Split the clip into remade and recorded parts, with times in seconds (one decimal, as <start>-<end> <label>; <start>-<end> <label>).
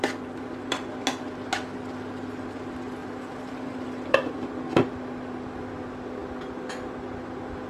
0.0-0.9 remade; 0.9-1.9 recorded; 1.9-7.7 remade